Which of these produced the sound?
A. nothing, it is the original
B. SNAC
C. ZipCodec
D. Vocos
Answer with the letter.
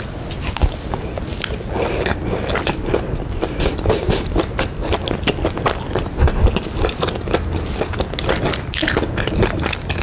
A